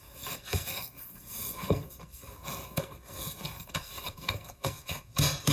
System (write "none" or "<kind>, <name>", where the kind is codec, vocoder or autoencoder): codec, SNAC